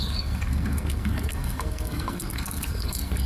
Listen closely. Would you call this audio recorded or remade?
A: remade